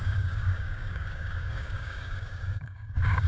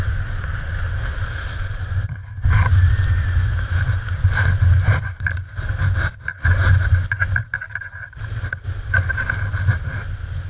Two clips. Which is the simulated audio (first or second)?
first